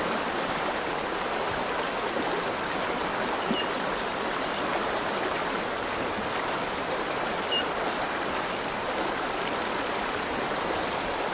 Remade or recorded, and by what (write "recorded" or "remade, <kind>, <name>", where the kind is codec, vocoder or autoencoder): recorded